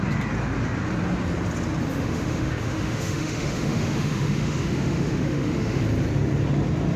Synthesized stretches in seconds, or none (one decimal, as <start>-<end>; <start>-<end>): 1.9-5.8